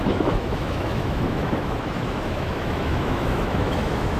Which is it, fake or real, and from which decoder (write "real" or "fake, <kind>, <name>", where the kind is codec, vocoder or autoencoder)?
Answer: fake, autoencoder, DAC-VAE